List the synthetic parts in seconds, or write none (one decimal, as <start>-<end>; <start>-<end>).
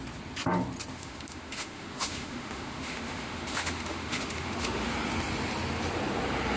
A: 0.9-4.9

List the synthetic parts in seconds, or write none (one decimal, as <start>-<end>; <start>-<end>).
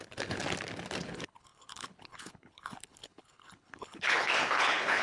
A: 0.0-0.4; 1.0-5.0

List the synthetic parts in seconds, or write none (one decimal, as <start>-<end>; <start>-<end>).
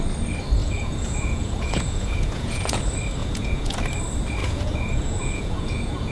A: 0.6-2.8; 3.2-3.8; 4.4-6.1